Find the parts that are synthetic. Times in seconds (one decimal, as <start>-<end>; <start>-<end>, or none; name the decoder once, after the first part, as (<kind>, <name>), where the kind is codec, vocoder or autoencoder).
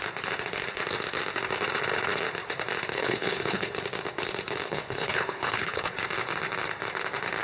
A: 2.9-3.8 (codec, HILCodec); 4.6-5.9